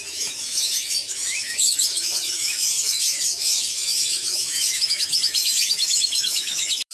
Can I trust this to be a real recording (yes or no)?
no